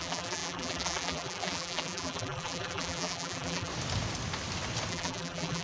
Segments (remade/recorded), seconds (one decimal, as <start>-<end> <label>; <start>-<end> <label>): 0.0-3.7 remade; 3.7-4.9 recorded; 4.9-5.6 remade